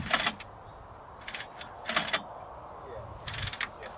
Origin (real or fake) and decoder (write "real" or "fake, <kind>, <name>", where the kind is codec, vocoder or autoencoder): real